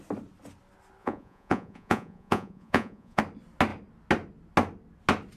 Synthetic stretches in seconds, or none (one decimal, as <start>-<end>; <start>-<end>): 1.0-3.2